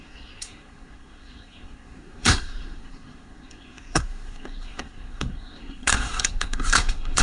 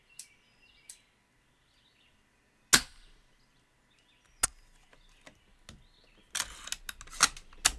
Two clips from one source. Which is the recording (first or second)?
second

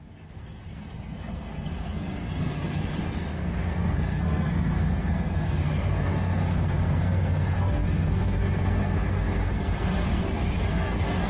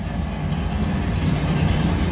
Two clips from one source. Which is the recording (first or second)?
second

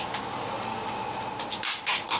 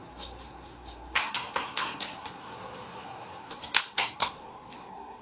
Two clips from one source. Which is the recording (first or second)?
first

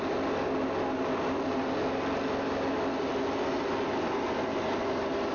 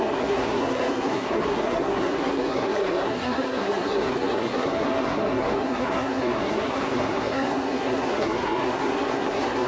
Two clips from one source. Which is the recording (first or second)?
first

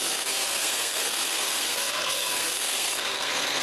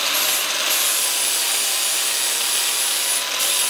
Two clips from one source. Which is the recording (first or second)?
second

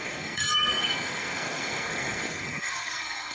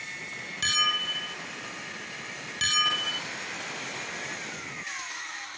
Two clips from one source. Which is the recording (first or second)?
second